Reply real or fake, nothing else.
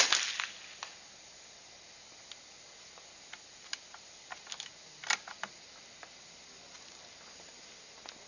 real